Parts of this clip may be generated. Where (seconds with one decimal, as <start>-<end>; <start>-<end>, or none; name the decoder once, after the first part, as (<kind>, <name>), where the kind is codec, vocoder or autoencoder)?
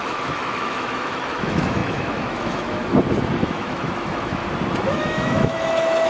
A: 0.0-2.8 (autoencoder, DAC-VAE); 3.4-4.4; 4.9-6.1